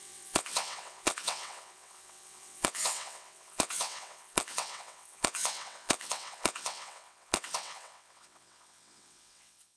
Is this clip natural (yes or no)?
no